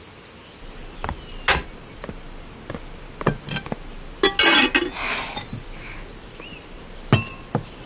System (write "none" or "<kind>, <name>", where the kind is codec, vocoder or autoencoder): none